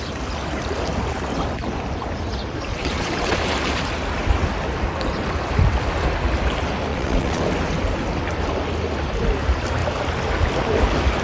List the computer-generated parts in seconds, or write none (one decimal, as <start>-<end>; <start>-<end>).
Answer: 2.7-3.4; 6.9-7.4